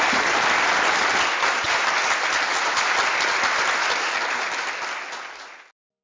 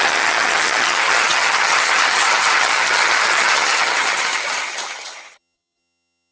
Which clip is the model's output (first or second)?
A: second